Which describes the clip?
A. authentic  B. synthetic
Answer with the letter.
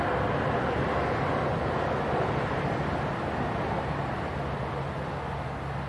A